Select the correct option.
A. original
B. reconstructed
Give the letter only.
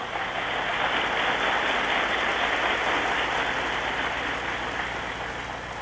A